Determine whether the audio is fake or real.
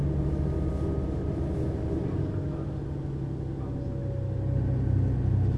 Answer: real